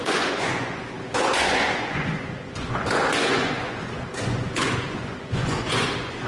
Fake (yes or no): yes